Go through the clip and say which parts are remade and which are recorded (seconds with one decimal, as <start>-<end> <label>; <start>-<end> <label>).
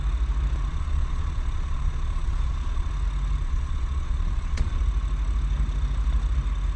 0.0-0.7 recorded; 0.7-2.9 remade; 2.9-3.4 recorded; 3.4-4.8 remade; 4.8-6.8 recorded